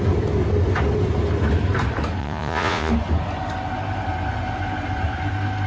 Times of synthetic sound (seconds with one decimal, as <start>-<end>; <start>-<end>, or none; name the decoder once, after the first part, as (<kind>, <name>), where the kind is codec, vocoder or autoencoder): 2.2-2.9 (vocoder, Vocos)